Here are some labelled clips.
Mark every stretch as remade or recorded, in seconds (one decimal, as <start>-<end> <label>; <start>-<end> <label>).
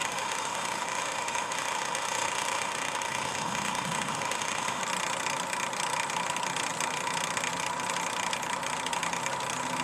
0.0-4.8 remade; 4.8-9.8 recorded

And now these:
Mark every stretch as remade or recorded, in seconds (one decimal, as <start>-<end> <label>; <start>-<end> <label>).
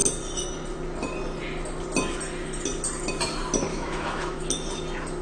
0.0-3.7 recorded; 3.7-4.4 remade; 4.4-5.2 recorded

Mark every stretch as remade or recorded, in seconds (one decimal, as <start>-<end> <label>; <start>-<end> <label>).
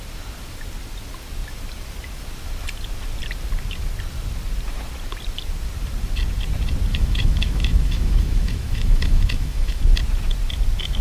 0.0-6.9 recorded; 6.9-9.8 remade; 9.8-11.0 recorded